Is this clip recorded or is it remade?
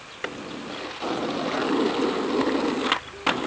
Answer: recorded